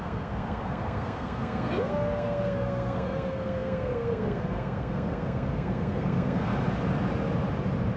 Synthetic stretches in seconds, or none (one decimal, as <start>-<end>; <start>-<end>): 0.0-6.5